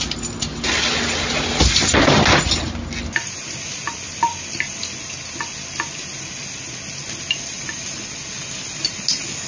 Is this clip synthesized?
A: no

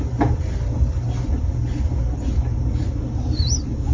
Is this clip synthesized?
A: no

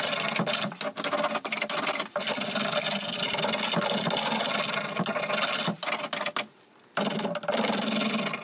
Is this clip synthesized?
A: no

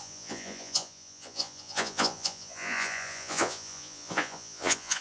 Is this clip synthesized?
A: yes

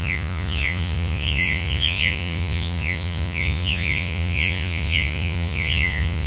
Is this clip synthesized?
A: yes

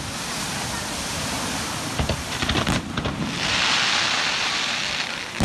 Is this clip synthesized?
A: no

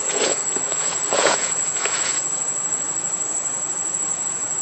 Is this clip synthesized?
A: yes